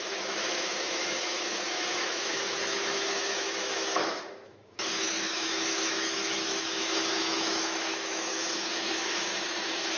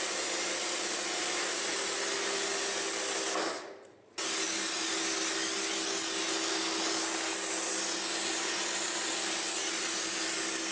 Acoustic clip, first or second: second